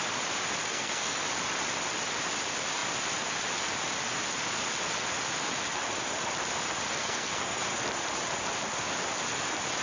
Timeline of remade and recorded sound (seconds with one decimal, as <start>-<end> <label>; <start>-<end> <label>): 0.0-0.6 recorded; 0.6-1.2 remade; 1.2-7.0 recorded; 7.0-7.6 remade; 7.6-9.8 recorded